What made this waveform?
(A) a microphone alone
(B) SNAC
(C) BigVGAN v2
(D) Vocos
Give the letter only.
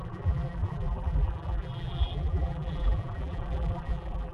C